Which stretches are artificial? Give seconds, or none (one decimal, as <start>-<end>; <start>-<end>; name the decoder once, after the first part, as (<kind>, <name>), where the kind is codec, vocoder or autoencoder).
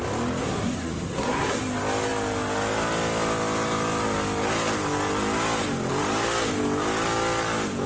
0.4-1.6 (codec, SNAC)